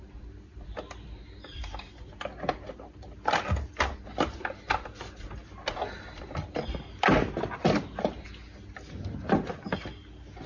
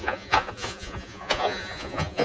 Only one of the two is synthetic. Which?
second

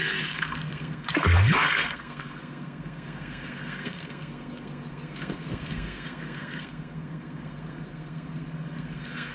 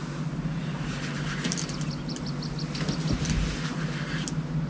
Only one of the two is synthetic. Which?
first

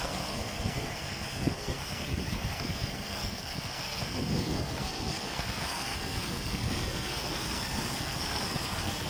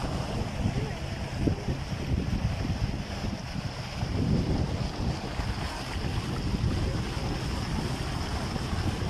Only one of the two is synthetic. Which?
first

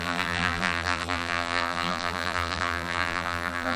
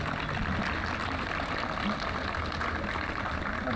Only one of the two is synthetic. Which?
first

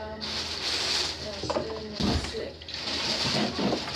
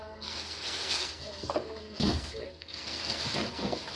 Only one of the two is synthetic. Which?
second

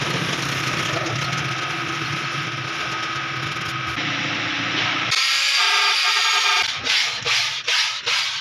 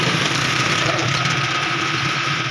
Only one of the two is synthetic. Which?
second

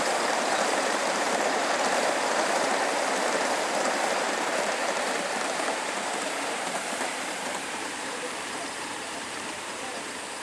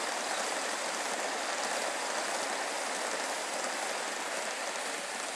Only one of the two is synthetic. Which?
first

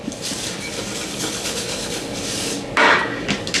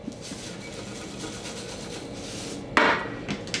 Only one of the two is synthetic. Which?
first